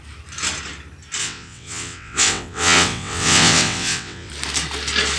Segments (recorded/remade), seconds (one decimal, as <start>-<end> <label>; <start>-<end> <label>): 0.0-1.2 recorded; 1.2-4.3 remade; 4.3-5.2 recorded